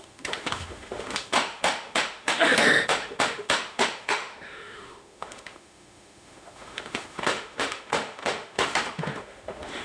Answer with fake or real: fake